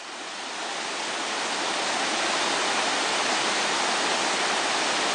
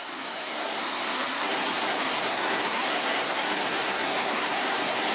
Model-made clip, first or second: second